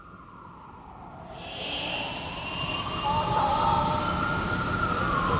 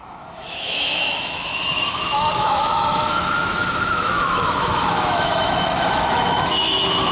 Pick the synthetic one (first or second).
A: second